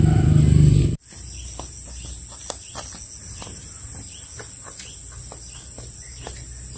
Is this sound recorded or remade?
recorded